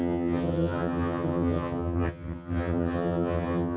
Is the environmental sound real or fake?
fake